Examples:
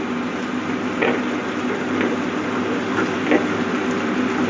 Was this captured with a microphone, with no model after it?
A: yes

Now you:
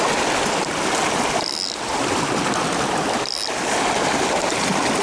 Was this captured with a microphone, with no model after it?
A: yes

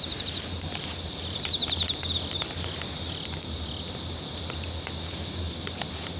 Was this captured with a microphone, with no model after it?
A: yes